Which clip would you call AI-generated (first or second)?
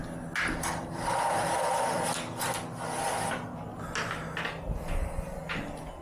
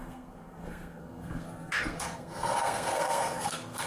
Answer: second